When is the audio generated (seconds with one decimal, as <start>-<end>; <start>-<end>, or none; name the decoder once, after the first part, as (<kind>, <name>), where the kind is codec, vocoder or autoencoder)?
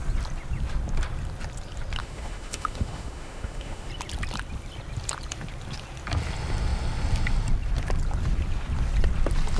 2.0-3.9 (autoencoder, DAC-VAE)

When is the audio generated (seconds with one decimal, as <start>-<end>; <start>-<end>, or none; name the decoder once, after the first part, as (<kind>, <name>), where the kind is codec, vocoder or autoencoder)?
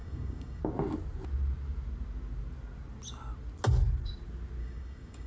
0.0-0.6 (codec, DAC); 4.6-5.3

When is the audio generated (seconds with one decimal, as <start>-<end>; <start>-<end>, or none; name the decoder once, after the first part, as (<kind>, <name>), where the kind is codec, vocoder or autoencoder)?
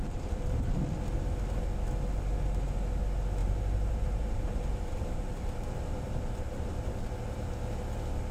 0.0-0.5 (vocoder, BigVGAN v2); 3.4-7.5